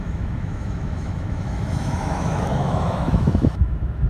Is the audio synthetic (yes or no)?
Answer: yes